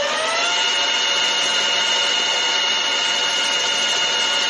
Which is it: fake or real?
real